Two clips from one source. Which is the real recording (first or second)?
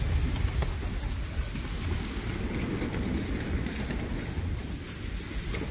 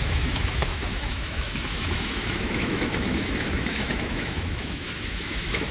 first